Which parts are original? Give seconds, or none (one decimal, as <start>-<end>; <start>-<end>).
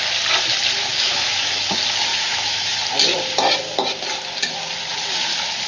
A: 0.0-0.9; 1.6-2.1; 2.8-5.7